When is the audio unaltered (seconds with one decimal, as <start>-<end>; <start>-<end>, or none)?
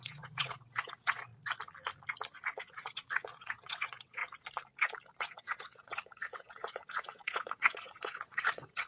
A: 1.3-2.6; 4.2-5.2